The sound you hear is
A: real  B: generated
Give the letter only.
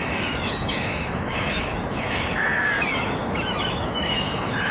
B